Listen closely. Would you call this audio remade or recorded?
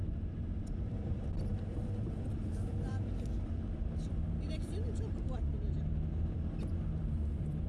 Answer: remade